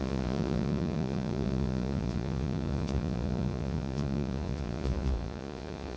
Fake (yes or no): yes